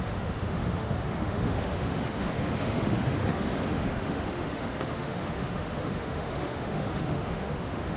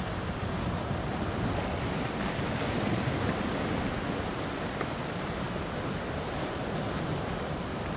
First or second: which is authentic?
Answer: second